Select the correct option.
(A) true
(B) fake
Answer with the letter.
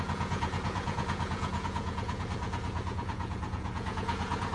B